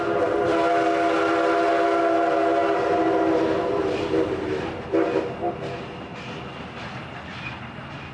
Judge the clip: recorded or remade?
recorded